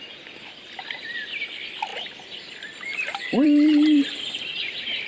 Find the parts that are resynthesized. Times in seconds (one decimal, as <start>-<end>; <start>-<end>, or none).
1.9-5.1